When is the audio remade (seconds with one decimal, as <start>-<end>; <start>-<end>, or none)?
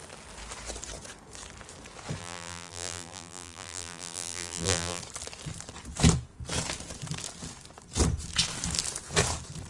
2.2-5.0